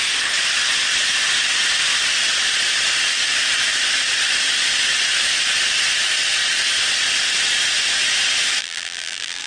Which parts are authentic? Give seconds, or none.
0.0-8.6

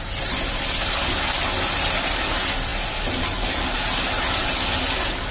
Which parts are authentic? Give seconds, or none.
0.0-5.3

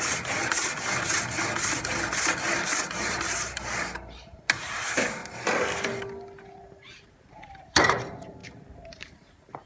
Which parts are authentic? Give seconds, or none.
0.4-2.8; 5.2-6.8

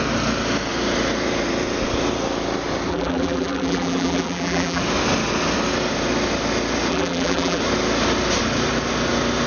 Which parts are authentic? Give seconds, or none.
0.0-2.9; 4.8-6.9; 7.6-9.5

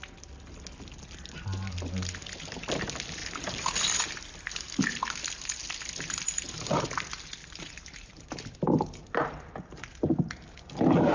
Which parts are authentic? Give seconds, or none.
0.0-3.2; 4.8-7.4; 9.8-11.1